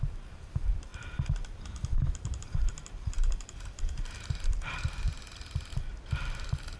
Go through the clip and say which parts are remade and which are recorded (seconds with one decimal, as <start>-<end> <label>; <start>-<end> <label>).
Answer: 0.0-0.9 remade; 0.9-1.6 recorded; 1.6-5.7 remade; 5.7-6.8 recorded